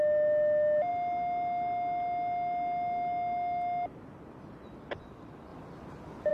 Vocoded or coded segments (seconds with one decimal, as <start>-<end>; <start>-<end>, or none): none